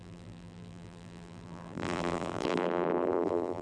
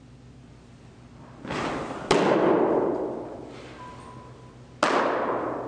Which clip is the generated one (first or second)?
first